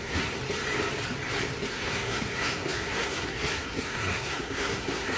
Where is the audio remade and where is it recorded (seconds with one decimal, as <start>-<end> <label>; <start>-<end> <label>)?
0.0-0.4 remade; 0.4-1.7 recorded; 1.7-5.2 remade